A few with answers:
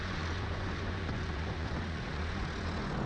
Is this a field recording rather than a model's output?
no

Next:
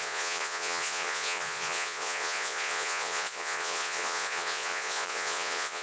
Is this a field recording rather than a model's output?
no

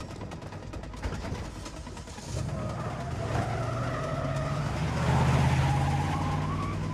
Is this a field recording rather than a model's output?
yes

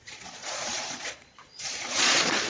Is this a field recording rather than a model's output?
no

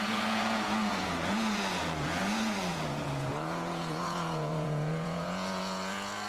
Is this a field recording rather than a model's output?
no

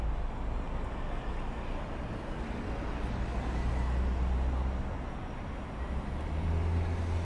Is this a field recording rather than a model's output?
yes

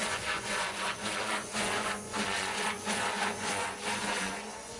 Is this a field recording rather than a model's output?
no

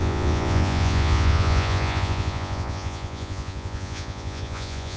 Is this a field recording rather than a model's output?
no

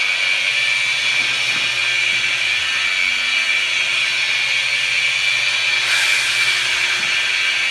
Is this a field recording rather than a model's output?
yes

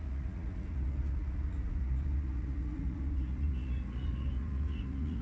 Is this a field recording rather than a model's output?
no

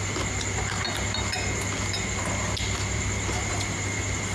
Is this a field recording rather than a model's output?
yes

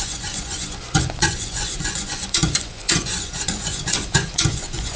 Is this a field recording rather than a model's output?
no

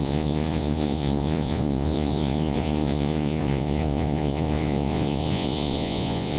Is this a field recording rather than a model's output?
no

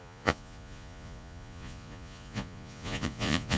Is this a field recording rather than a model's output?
no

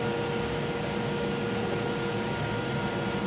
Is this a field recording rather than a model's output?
yes